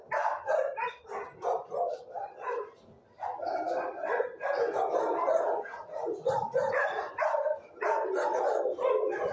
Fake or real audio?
fake